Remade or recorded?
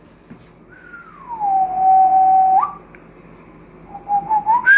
recorded